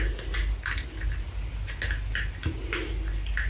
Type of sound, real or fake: real